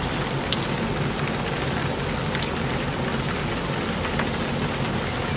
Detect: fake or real real